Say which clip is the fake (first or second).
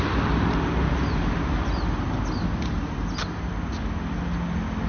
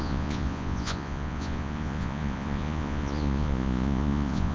second